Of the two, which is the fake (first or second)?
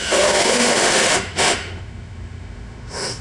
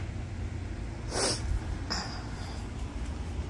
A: first